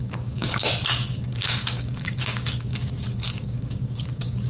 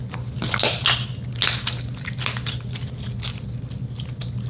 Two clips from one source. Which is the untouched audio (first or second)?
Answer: second